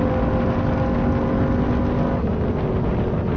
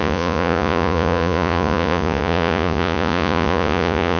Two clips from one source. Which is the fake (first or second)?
second